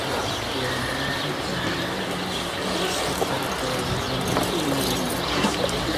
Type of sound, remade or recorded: recorded